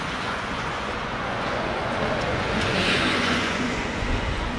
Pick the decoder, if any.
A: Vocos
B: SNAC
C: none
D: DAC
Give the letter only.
A